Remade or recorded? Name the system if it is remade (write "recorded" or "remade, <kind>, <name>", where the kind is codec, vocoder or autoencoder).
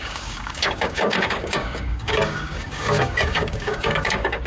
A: remade, codec, DAC